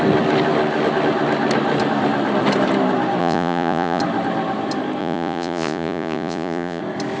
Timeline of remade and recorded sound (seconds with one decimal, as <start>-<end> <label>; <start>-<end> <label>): 0.0-3.2 recorded; 3.2-4.0 remade; 4.0-5.0 recorded; 5.0-6.8 remade; 6.8-7.2 recorded